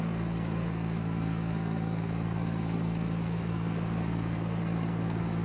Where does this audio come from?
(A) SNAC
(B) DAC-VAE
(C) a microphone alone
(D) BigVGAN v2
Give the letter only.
A